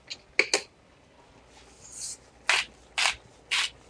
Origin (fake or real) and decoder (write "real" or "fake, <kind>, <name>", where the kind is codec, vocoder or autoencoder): real